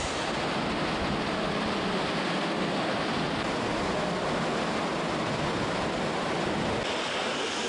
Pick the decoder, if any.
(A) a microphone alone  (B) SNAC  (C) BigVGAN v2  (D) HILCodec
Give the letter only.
A